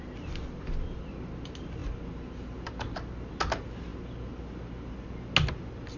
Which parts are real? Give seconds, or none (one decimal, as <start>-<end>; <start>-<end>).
0.0-6.0